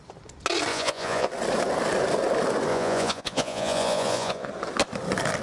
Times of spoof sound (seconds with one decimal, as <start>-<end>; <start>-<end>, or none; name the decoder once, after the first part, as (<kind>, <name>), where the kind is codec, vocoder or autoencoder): 0.7-1.3 (vocoder, Vocos); 2.7-4.5